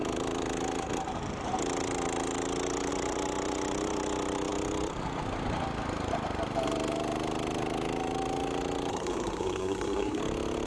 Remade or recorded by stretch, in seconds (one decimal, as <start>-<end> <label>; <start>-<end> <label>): 0.0-8.9 recorded; 8.9-10.2 remade; 10.2-10.7 recorded

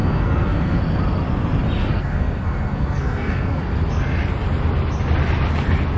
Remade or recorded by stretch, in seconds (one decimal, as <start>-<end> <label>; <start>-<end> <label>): 0.0-0.8 remade; 0.8-1.8 recorded; 1.8-3.6 remade; 3.6-6.0 recorded

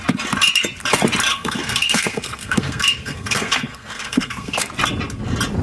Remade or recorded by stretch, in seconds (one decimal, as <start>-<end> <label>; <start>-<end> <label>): 0.0-1.3 recorded; 1.3-4.7 remade; 4.7-5.6 recorded

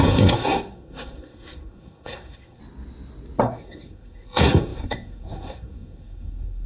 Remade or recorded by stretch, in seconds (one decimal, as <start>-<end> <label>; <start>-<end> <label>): 0.0-2.6 remade; 2.6-3.4 recorded; 3.4-6.7 remade